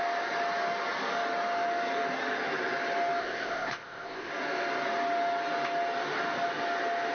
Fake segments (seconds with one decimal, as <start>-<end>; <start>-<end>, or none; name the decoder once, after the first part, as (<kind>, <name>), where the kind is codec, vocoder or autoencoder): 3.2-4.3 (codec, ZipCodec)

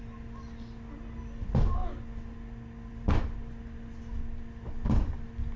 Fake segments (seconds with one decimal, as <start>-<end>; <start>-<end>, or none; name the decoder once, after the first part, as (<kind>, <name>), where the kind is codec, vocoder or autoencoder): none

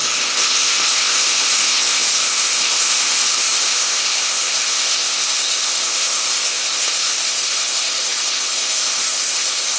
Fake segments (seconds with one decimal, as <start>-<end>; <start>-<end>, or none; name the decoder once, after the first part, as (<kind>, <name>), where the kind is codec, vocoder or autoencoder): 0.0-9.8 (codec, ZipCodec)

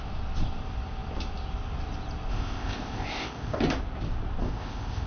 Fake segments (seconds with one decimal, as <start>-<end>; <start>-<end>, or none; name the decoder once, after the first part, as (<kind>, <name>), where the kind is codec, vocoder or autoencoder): 2.3-3.6 (codec, ZipCodec); 4.4-5.1

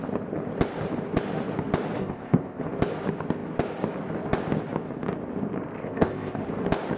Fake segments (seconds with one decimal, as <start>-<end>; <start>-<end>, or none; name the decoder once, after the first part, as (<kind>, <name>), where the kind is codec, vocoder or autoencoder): 2.0-2.6 (codec, ZipCodec); 5.8-6.4

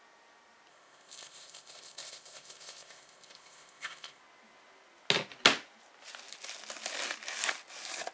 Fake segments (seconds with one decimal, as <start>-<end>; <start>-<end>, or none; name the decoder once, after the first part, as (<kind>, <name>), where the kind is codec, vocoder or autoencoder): 0.7-4.2 (codec, ZipCodec)